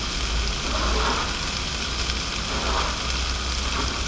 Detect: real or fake real